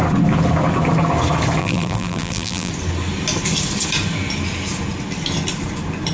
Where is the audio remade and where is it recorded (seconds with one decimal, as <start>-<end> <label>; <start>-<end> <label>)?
0.0-1.6 recorded; 1.6-2.7 remade; 2.7-6.1 recorded

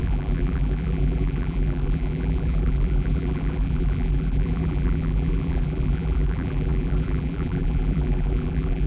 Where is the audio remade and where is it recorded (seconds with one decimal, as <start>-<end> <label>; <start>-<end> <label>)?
0.0-8.9 remade

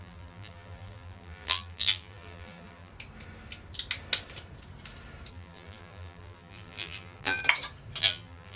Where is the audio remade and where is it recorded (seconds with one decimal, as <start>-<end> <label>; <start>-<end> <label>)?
0.0-2.9 remade; 2.9-5.3 recorded; 5.3-7.4 remade; 7.4-8.0 recorded; 8.0-8.6 remade

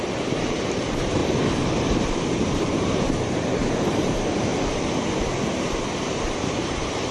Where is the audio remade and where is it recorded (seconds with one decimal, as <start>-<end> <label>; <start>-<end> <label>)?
0.0-1.2 remade; 1.2-2.4 recorded; 2.4-4.5 remade; 4.5-6.0 recorded; 6.0-7.1 remade

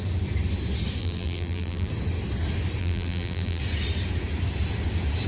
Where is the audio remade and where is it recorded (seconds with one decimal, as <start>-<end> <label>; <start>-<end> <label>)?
0.0-1.0 recorded; 1.0-1.9 remade; 1.9-2.8 recorded; 2.8-3.6 remade; 3.6-5.3 recorded

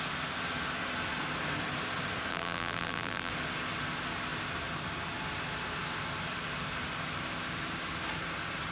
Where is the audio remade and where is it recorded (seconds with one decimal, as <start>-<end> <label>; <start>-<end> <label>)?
0.0-2.3 recorded; 2.3-3.3 remade; 3.3-8.7 recorded

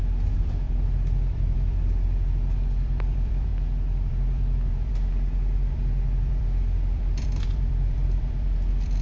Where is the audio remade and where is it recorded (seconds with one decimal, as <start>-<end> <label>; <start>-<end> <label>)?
0.0-3.5 remade; 3.5-4.1 recorded; 4.1-9.0 remade

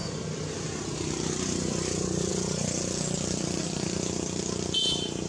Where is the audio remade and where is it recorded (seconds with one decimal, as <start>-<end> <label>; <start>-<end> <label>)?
0.0-0.8 recorded; 0.8-2.3 remade; 2.3-3.6 recorded; 3.6-5.3 remade